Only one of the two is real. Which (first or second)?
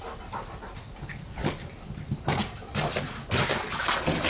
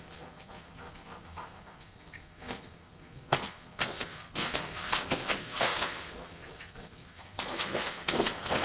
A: first